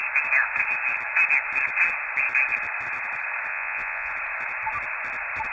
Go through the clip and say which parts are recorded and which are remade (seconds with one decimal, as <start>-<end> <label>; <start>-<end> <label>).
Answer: 0.0-3.5 recorded; 3.5-4.1 remade; 4.1-5.5 recorded